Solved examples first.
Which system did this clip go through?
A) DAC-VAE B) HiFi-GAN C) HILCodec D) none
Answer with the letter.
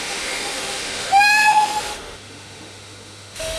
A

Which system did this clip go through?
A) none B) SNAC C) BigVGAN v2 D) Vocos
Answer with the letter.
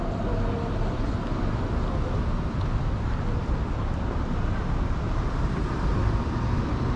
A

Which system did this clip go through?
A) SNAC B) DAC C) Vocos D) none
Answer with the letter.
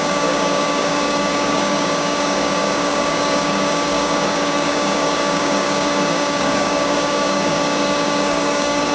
B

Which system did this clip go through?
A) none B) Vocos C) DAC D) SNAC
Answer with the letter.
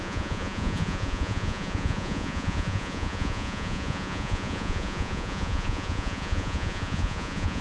B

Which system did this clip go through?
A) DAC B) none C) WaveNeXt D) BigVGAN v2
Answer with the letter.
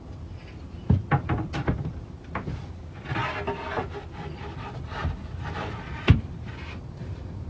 B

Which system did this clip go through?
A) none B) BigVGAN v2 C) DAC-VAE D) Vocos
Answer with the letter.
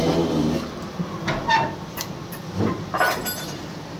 A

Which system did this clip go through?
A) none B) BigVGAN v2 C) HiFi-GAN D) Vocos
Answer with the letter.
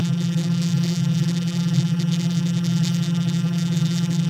B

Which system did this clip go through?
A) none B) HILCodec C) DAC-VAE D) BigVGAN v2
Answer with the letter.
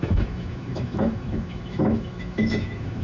C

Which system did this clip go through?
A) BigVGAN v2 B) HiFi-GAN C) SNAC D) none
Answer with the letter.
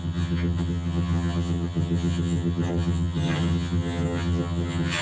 B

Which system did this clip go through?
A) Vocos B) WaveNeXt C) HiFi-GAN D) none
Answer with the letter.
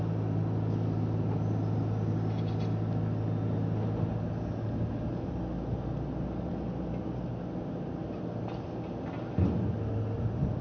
D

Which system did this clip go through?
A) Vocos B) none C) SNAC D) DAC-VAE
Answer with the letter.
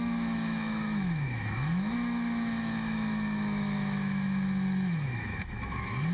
D